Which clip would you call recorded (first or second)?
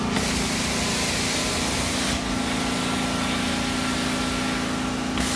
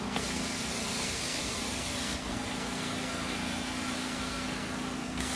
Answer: first